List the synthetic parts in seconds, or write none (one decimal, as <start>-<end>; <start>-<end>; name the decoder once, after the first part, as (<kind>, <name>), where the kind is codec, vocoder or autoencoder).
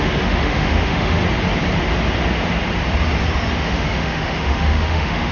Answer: 0.0-1.2 (autoencoder, DAC-VAE); 3.5-5.3